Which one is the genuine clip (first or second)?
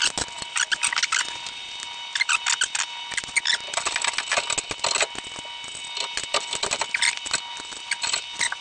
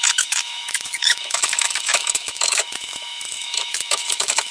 first